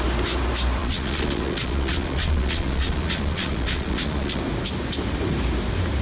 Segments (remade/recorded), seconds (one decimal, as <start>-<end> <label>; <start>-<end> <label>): 0.0-0.8 recorded; 0.8-4.4 remade; 4.4-6.0 recorded